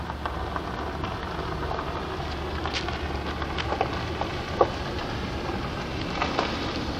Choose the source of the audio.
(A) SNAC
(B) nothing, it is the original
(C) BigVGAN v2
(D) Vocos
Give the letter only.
B